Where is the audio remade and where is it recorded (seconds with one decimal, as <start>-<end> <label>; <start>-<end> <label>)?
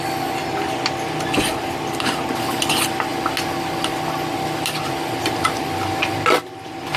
0.0-7.0 recorded